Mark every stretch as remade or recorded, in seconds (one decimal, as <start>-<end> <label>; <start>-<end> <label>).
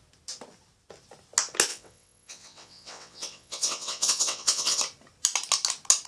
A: 0.0-1.7 recorded; 1.7-4.8 remade; 4.8-6.1 recorded